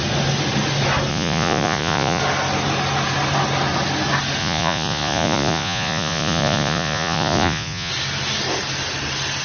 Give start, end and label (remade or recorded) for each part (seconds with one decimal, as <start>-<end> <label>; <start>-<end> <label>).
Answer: 0.0-1.1 recorded; 1.1-2.2 remade; 2.2-4.4 recorded; 4.4-7.9 remade; 7.9-9.4 recorded